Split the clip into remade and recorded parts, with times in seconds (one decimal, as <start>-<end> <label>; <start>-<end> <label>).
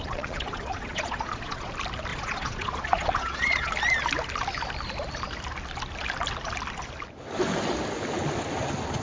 0.0-1.7 remade; 1.7-2.1 recorded; 2.1-3.7 remade; 3.7-9.0 recorded